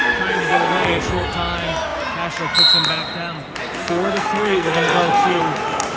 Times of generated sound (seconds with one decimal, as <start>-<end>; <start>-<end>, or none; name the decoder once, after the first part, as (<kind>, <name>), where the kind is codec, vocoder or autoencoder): 0.4-1.3 (codec, SNAC); 3.8-5.4